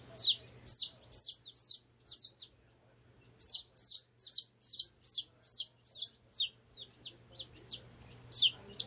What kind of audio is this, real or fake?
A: real